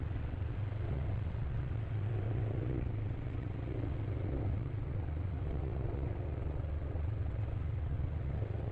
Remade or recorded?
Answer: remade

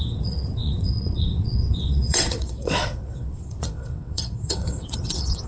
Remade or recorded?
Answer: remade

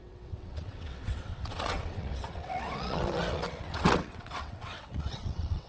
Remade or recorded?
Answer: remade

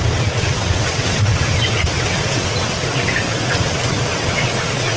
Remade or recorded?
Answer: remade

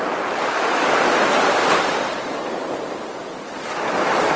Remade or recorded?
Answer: recorded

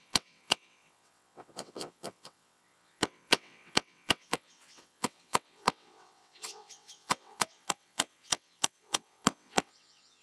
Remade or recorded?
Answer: remade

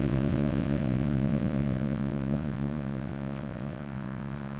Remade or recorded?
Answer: remade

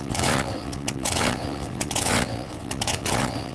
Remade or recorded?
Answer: remade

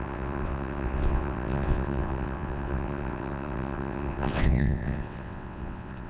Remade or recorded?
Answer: remade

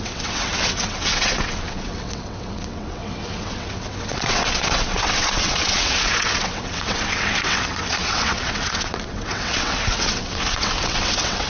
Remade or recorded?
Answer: remade